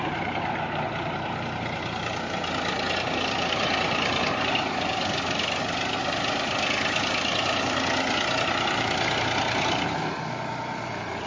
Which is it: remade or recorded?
recorded